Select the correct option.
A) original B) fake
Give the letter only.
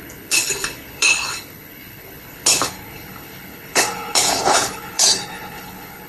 B